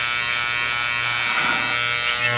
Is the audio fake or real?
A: real